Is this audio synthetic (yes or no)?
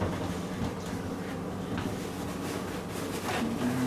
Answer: no